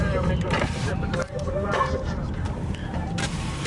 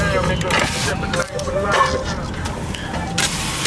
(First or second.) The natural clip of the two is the second